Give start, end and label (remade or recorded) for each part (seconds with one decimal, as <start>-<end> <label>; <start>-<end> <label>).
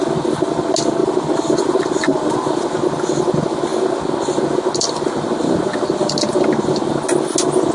0.0-1.0 recorded; 1.0-2.3 remade; 2.3-7.7 recorded